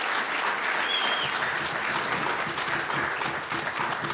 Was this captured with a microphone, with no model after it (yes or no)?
yes